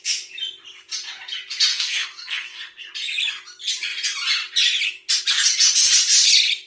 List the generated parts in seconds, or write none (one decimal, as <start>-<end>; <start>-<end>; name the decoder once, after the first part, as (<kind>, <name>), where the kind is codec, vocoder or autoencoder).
1.7-2.9 (codec, SNAC)